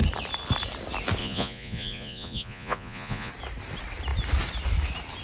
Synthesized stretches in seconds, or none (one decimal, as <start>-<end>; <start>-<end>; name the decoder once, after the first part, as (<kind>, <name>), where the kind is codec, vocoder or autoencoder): 1.2-3.3 (vocoder, Vocos)